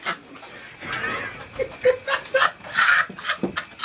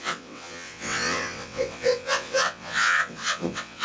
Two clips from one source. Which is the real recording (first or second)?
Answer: first